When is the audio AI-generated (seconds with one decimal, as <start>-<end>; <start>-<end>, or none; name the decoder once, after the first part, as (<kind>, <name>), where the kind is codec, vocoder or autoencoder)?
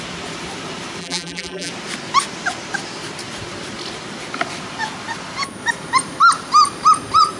1.0-1.7 (vocoder, BigVGAN v2)